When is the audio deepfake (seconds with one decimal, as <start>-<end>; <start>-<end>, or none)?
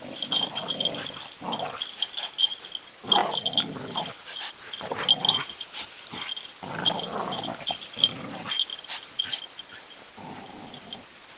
3.2-4.1